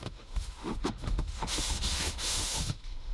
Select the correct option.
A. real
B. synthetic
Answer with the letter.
B